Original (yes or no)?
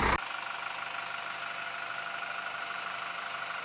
yes